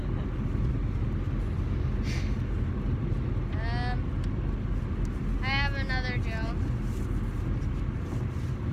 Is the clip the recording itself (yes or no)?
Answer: yes